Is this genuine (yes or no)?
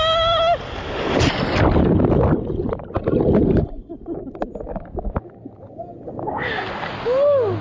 yes